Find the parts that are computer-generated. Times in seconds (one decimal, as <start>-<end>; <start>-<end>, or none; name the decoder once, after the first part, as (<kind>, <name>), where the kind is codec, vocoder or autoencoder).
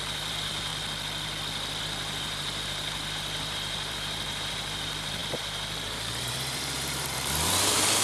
0.0-0.7 (vocoder, BigVGAN v2); 1.8-8.0